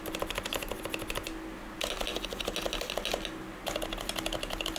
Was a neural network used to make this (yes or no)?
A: no